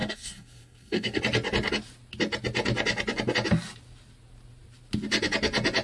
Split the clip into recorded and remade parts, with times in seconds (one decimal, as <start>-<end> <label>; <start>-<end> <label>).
0.0-1.2 remade; 1.2-5.8 recorded